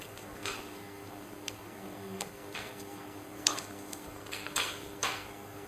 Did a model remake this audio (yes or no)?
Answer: yes